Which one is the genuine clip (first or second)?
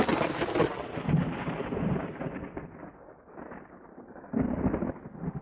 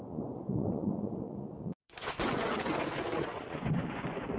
first